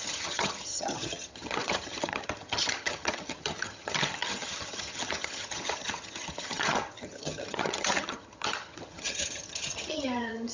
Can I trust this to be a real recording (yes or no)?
no